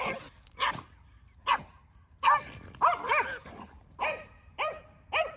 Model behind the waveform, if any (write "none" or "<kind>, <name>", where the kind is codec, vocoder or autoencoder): none